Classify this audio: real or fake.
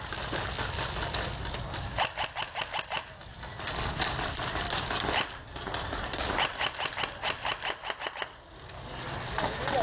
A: real